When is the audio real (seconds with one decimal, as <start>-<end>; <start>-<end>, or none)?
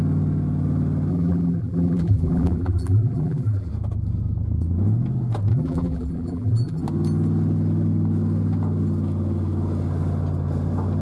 0.0-1.1; 3.7-5.5; 6.8-11.0